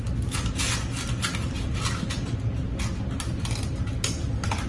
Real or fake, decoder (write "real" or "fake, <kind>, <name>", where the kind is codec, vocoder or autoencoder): real